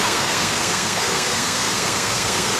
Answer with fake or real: fake